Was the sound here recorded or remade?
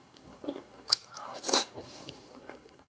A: remade